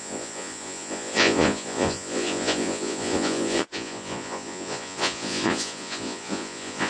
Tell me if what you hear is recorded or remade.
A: remade